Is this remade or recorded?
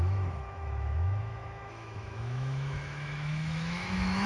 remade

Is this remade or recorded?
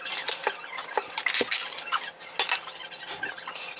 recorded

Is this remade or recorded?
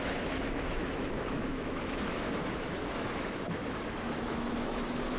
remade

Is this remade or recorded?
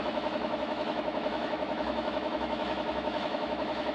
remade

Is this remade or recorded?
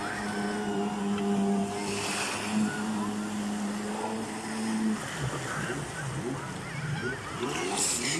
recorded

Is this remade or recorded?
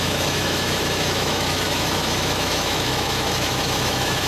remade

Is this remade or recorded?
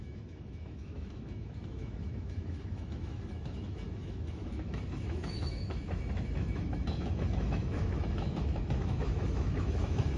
remade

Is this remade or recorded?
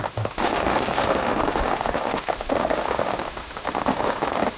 remade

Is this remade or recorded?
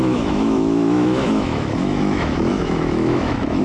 remade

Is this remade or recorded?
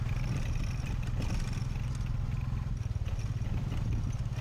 recorded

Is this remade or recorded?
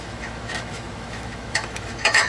remade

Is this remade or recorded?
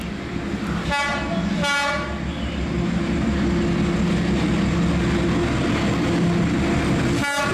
recorded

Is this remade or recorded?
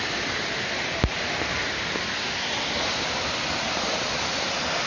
recorded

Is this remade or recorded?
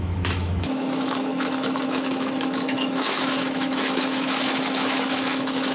remade